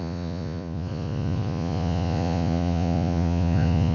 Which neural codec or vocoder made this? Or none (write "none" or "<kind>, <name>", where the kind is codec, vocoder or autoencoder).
vocoder, Vocos